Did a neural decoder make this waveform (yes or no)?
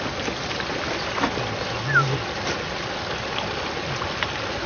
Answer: no